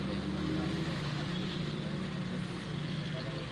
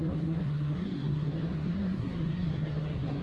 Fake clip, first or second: second